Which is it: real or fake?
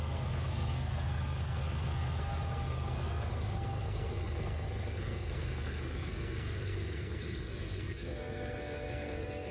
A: fake